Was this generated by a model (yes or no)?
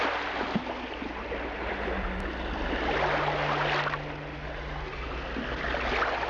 no